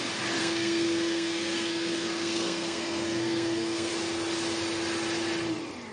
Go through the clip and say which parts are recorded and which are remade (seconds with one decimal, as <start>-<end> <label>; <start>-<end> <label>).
0.0-0.4 recorded; 0.4-3.9 remade; 3.9-5.9 recorded